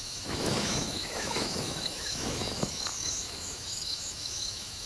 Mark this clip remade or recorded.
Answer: remade